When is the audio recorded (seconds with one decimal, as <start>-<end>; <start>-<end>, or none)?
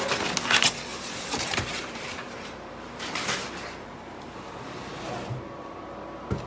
0.0-0.9; 4.5-6.5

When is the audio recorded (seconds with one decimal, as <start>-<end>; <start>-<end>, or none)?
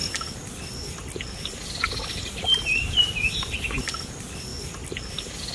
0.0-3.3; 4.5-5.1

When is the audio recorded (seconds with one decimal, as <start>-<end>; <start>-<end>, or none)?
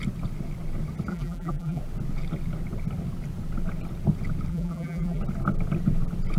0.0-1.1; 1.8-4.5; 5.2-6.4